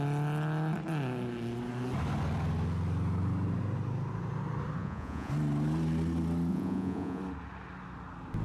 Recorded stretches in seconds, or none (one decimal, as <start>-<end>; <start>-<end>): 0.0-4.8; 5.3-6.5; 7.2-8.4